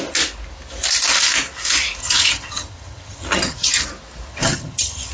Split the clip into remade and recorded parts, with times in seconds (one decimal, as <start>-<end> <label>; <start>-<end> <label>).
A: 0.0-2.0 recorded; 2.0-3.8 remade; 3.8-4.3 recorded; 4.3-5.1 remade